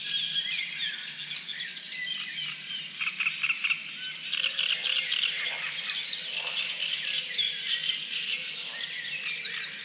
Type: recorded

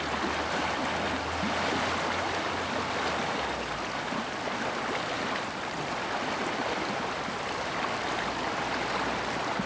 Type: recorded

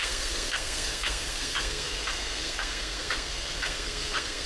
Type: remade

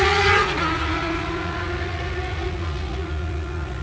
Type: remade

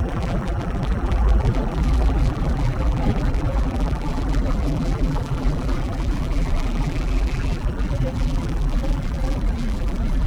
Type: remade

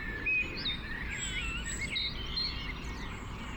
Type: recorded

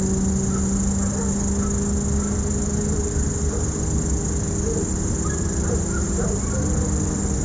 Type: recorded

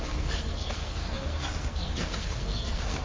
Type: remade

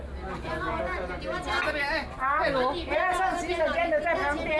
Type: recorded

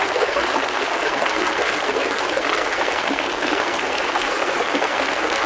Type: remade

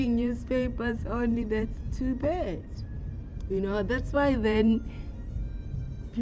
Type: remade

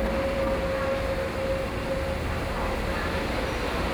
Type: recorded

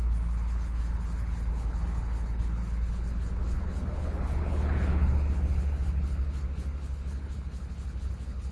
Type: remade